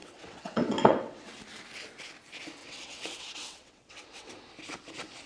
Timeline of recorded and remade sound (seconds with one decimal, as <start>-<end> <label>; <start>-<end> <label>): 0.0-1.3 remade; 1.3-2.6 recorded; 2.6-4.3 remade; 4.3-5.3 recorded